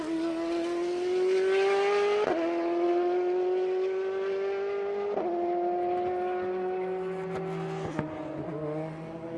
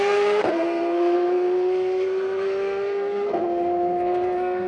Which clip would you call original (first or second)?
first